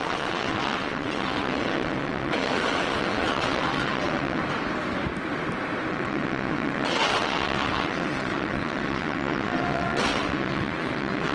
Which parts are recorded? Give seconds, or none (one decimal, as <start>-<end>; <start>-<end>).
4.4-5.9